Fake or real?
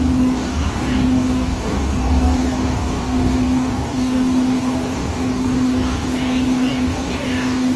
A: fake